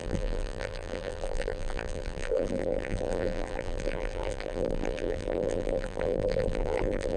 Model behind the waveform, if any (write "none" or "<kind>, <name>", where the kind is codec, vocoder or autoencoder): vocoder, BigVGAN v2